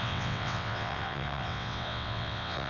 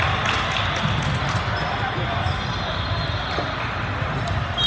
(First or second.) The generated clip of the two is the first